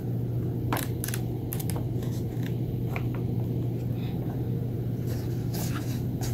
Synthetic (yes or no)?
no